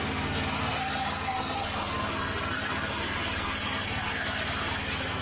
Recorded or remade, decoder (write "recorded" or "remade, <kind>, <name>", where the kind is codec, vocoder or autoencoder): remade, codec, SNAC